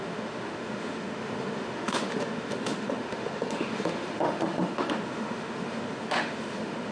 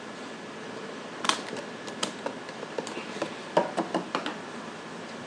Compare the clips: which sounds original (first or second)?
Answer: second